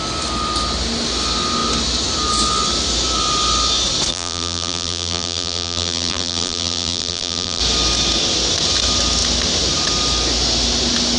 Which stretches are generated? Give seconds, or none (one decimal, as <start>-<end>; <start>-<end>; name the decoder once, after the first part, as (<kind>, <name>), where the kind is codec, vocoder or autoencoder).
4.1-7.6 (vocoder, BigVGAN v2)